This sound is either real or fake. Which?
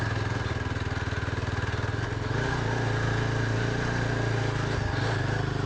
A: real